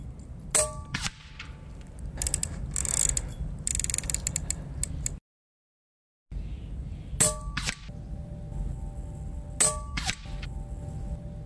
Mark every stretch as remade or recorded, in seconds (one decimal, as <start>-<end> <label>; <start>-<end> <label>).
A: 0.0-11.5 recorded

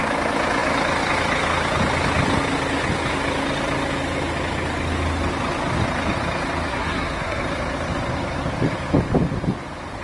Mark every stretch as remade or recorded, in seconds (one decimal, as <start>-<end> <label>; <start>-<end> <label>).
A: 0.0-6.7 recorded; 6.7-7.4 remade; 7.4-10.0 recorded

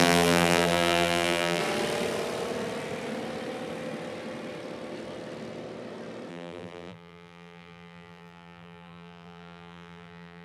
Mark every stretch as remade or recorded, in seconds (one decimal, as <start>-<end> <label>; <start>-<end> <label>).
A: 0.0-1.6 remade; 1.6-6.3 recorded; 6.3-10.4 remade

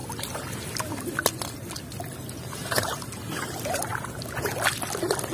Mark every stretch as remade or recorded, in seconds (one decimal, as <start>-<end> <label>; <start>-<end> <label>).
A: 0.0-5.3 recorded

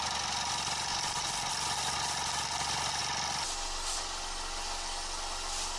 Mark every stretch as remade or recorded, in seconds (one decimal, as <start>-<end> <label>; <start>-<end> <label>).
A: 0.0-0.9 recorded; 0.9-1.5 remade; 1.5-5.8 recorded

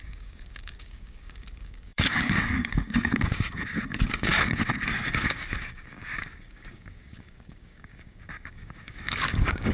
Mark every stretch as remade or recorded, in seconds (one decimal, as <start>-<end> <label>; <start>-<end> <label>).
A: 0.0-9.7 remade

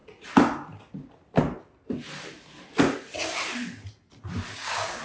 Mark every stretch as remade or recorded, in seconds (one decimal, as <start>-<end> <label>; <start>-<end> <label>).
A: 0.0-4.5 recorded; 4.5-5.0 remade

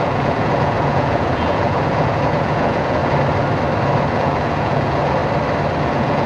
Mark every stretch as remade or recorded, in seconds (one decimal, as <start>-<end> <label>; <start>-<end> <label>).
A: 0.0-3.0 remade; 3.0-4.1 recorded; 4.1-5.2 remade; 5.2-5.8 recorded; 5.8-6.3 remade